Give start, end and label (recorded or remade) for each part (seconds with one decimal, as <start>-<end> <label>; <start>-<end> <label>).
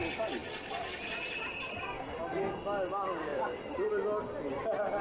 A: 0.0-3.3 recorded; 3.3-3.9 remade; 3.9-5.0 recorded